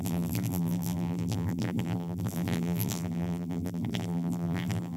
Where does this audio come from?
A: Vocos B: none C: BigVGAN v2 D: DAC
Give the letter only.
C